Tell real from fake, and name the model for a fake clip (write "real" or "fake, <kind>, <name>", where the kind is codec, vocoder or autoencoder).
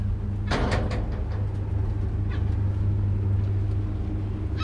real